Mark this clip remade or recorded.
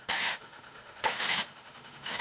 remade